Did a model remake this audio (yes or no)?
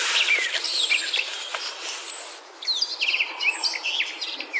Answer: no